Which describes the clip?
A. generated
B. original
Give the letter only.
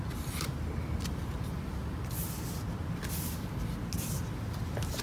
B